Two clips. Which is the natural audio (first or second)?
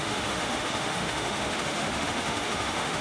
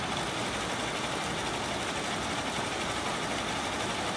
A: second